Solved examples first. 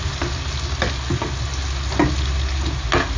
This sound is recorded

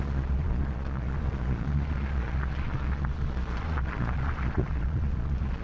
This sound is remade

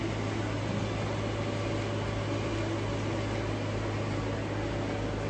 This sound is recorded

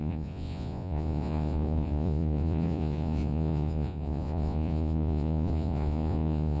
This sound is remade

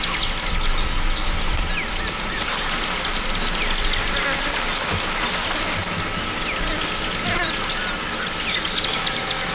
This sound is recorded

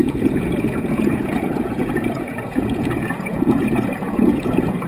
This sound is remade